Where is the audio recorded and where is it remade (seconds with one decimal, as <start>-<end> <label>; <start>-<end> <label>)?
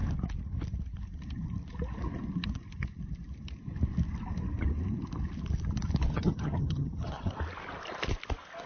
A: 0.0-6.1 recorded; 6.1-7.3 remade; 7.3-8.7 recorded